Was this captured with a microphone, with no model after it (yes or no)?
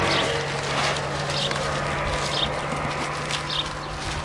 yes